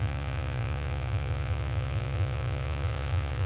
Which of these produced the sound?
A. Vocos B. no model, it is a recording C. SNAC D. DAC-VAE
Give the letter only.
A